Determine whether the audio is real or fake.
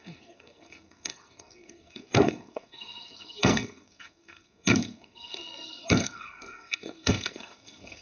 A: fake